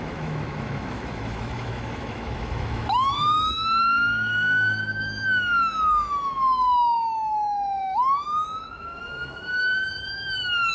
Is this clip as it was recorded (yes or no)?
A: no